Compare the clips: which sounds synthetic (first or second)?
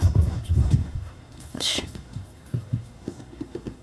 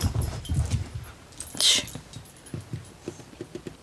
first